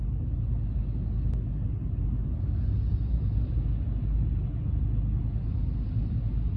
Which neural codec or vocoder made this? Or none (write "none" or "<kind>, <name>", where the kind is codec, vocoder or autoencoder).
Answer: none